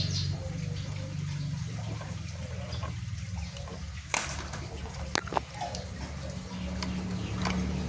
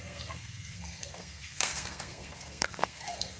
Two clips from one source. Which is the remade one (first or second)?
second